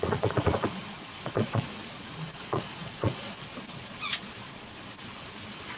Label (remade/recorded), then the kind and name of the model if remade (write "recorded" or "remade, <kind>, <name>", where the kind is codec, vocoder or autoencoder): remade, vocoder, Vocos